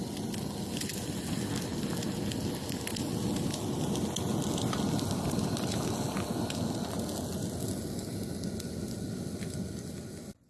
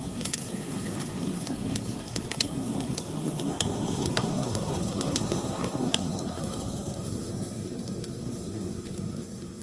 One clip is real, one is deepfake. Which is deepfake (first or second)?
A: second